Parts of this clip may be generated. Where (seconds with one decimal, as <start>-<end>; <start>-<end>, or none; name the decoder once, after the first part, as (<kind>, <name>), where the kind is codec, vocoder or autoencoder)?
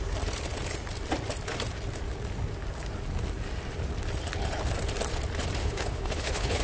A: 5.6-6.6 (codec, HILCodec)